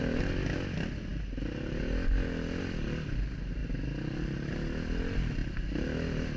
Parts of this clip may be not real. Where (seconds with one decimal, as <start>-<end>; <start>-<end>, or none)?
none